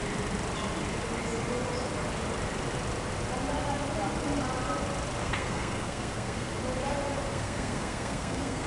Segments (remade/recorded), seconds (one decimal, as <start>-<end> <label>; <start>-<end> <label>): 0.0-5.2 recorded; 5.2-6.5 remade; 6.5-7.3 recorded; 7.3-8.7 remade